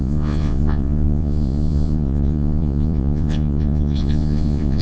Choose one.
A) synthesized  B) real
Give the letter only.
A